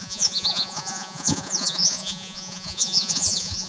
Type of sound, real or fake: fake